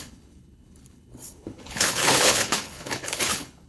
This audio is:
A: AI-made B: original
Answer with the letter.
A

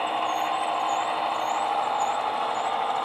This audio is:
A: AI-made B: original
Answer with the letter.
B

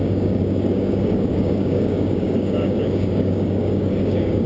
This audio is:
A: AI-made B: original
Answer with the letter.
A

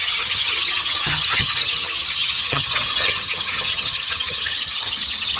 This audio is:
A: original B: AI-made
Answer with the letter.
B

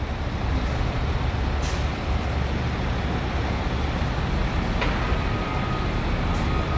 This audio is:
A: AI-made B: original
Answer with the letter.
B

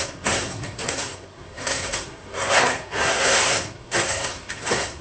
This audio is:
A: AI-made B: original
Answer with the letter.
A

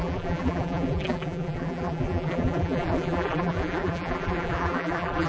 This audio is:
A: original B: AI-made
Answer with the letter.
B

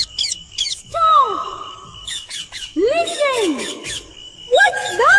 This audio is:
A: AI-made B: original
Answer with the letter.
A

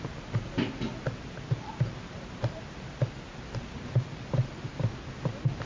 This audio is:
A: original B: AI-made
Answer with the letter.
A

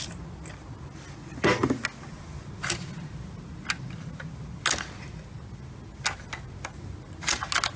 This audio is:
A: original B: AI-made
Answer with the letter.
A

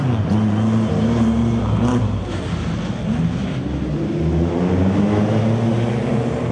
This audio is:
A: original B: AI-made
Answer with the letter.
A